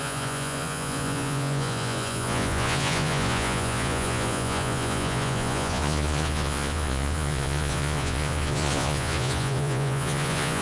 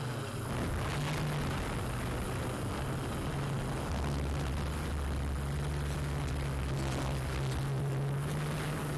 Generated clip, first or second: first